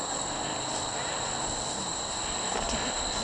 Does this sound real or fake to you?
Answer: real